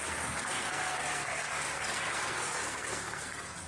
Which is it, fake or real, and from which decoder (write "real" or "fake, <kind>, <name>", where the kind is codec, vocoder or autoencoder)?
fake, codec, SNAC